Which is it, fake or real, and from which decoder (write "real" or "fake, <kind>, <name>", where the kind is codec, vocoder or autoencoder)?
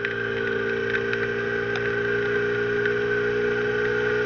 real